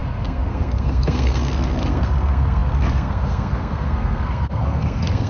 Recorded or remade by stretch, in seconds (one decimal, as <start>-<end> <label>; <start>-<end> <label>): 0.0-5.3 remade